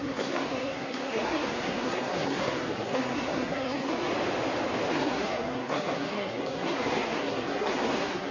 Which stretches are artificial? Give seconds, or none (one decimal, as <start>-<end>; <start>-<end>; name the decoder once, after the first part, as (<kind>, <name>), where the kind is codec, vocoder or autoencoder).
0.0-4.1 (codec, SNAC); 4.9-8.3